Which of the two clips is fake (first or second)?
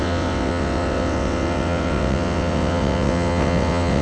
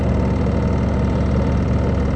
first